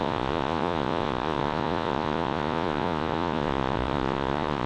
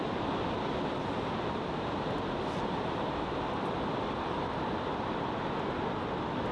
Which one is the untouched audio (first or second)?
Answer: second